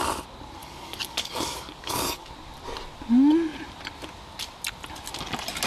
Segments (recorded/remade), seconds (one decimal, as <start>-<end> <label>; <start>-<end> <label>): 0.0-0.6 recorded; 0.6-2.3 remade; 2.3-5.7 recorded